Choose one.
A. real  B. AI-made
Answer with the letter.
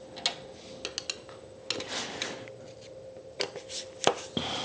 A